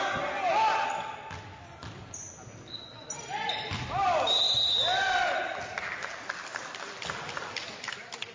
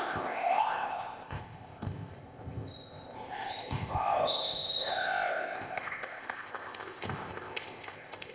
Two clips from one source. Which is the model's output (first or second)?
second